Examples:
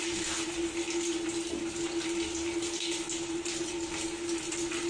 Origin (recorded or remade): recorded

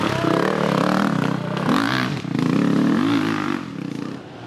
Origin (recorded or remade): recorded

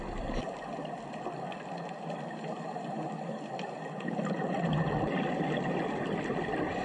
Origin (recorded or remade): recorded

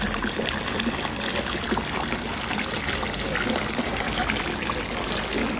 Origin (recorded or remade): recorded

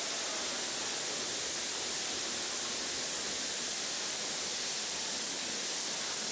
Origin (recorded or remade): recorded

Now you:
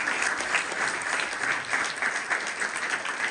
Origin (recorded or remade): recorded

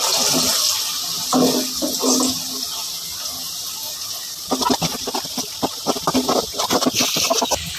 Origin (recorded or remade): recorded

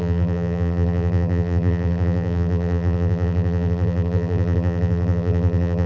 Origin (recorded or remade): remade